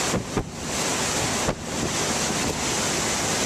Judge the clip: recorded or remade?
recorded